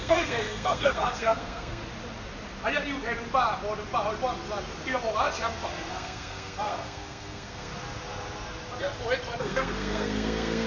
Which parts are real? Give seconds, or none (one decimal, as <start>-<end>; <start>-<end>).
1.8-5.9; 7.7-9.4